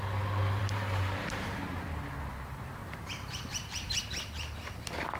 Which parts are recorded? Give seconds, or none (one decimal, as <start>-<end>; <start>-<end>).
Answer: 0.0-0.6; 1.6-2.8; 4.8-5.2